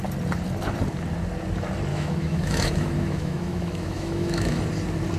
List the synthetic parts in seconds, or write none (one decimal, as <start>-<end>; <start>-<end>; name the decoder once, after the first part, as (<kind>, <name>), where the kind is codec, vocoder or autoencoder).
1.9-4.6 (autoencoder, DAC-VAE)

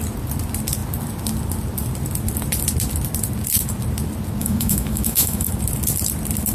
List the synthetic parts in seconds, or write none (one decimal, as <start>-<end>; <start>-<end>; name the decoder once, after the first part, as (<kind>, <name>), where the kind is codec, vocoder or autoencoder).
4.4-5.5 (autoencoder, DAC-VAE)

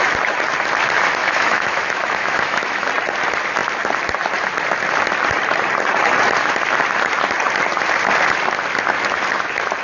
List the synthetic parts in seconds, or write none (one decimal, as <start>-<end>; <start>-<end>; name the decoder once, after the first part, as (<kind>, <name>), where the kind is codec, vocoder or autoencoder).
1.2-2.9 (autoencoder, DAC-VAE)

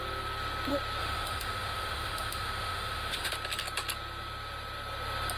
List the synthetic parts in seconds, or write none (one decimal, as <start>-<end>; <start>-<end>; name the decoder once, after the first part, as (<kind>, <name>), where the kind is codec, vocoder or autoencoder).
1.0-3.3 (autoencoder, DAC-VAE)

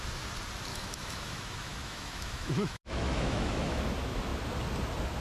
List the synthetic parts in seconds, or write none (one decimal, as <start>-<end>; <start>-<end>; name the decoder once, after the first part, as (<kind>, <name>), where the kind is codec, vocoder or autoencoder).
0.7-3.8 (autoencoder, DAC-VAE)

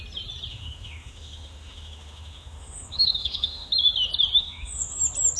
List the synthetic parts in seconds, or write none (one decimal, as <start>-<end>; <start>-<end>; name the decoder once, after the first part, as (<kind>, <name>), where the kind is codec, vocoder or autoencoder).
0.5-3.7 (autoencoder, DAC-VAE); 4.4-5.0

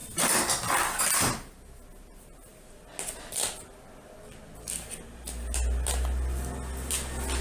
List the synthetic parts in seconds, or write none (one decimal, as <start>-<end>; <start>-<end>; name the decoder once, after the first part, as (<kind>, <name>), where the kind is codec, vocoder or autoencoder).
none

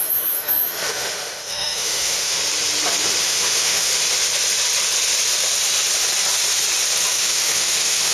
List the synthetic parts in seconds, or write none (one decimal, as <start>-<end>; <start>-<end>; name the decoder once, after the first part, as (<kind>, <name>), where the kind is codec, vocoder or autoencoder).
0.0-2.4 (autoencoder, DAC-VAE); 3.2-3.9; 7.1-8.1